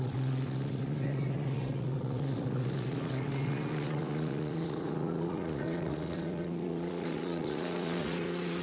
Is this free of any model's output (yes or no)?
no